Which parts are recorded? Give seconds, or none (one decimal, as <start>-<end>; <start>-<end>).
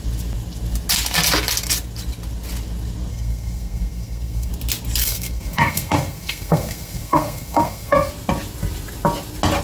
0.0-3.1; 4.5-5.0; 8.1-9.6